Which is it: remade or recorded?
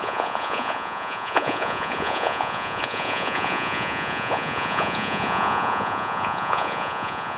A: remade